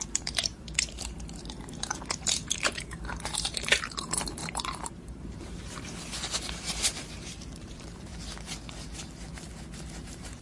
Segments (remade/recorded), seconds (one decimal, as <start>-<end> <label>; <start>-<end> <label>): 0.0-8.1 remade; 8.1-10.0 recorded; 10.0-10.4 remade